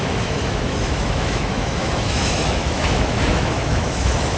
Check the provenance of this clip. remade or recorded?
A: remade